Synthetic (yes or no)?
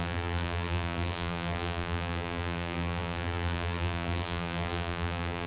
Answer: yes